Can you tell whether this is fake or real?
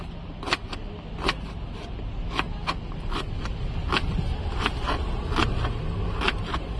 real